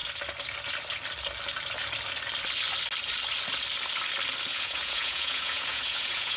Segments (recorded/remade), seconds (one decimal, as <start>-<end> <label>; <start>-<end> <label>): 0.0-4.5 recorded; 4.5-6.4 remade